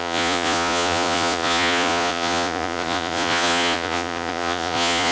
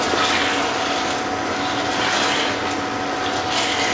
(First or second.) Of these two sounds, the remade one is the first